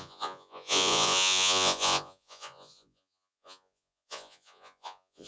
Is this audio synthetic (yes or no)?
yes